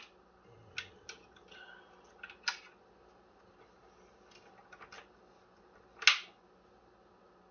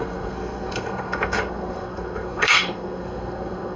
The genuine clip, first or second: first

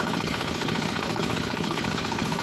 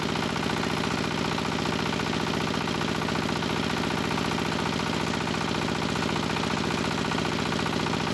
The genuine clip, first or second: second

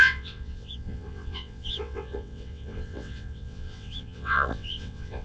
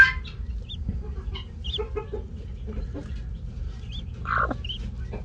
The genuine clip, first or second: second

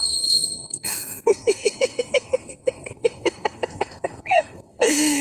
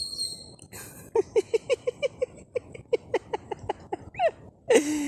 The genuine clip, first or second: second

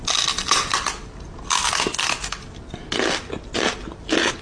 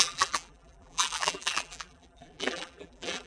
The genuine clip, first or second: first